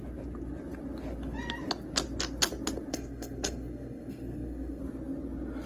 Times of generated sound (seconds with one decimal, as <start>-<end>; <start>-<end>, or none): 2.9-4.8